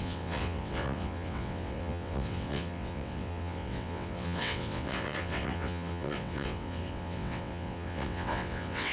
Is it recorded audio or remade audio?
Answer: remade